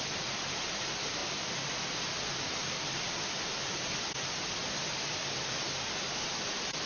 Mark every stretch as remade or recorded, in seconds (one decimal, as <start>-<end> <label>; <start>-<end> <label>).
0.0-6.9 recorded